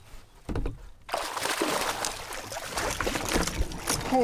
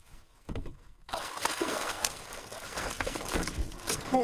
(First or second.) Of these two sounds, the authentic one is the first